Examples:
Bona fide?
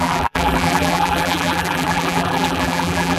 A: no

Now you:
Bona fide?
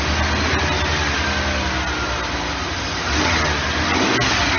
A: yes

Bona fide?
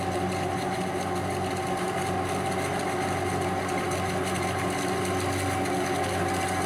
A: yes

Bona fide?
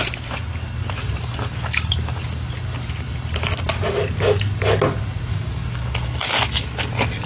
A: yes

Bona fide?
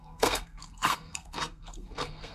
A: no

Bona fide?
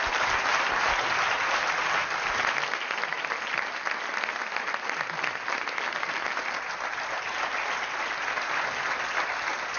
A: yes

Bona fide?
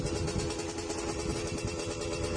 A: yes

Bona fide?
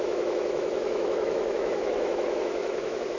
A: no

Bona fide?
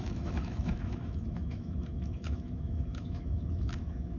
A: no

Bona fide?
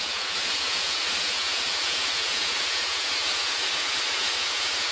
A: no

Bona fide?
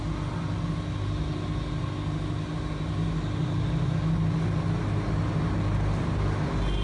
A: yes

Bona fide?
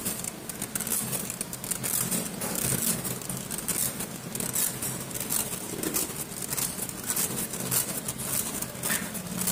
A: yes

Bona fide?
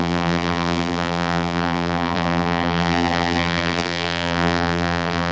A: no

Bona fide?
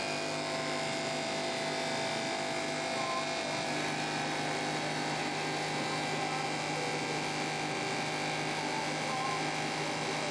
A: yes